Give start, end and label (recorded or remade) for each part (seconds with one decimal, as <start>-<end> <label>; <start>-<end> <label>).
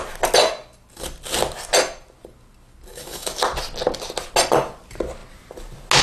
0.0-2.9 recorded; 2.9-3.4 remade; 3.4-6.0 recorded